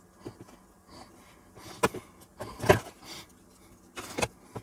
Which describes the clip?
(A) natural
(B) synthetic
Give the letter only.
A